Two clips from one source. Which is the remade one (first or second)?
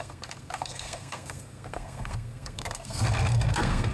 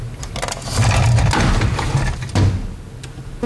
first